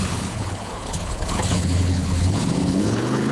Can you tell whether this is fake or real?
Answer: fake